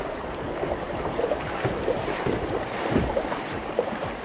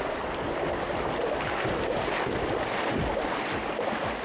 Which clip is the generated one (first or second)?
first